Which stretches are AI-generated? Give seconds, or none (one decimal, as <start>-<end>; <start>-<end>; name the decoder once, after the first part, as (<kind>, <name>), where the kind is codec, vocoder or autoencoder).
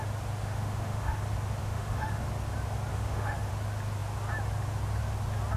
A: 0.4-1.2 (autoencoder, DAC-VAE); 1.6-2.2; 2.9-3.5